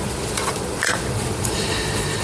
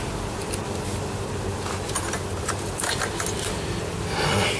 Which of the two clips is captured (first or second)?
second